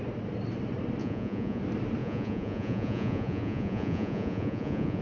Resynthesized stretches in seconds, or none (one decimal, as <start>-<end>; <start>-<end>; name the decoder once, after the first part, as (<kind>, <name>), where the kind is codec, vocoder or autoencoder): 1.0-1.6 (vocoder, Vocos); 2.0-5.0